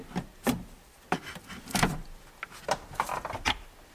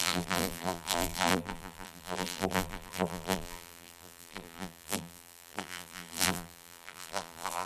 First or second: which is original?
first